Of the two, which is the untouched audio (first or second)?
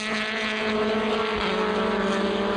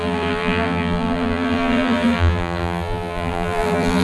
first